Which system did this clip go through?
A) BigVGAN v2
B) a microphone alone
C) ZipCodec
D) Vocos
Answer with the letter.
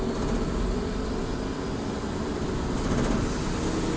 B